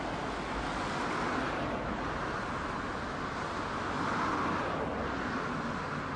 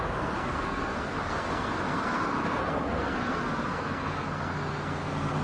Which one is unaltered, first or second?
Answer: first